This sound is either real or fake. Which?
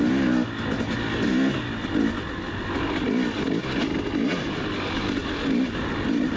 real